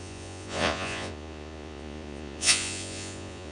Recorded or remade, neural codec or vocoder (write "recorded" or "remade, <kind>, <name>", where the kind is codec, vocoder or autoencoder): remade, vocoder, Vocos